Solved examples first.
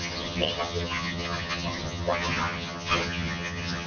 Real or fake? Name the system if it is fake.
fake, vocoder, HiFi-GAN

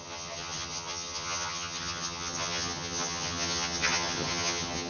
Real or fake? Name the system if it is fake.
fake, vocoder, HiFi-GAN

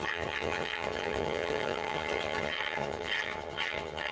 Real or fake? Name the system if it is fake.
fake, vocoder, HiFi-GAN